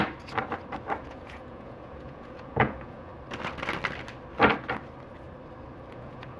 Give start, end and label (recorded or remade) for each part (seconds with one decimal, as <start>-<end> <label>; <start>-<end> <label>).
0.0-1.0 recorded; 1.0-3.1 remade; 3.1-5.9 recorded; 5.9-6.4 remade